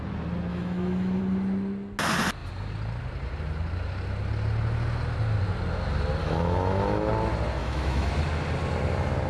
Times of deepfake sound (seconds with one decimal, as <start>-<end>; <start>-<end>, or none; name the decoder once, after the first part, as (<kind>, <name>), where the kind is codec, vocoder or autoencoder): 0.5-1.2 (autoencoder, DAC-VAE); 6.2-7.1; 7.6-8.1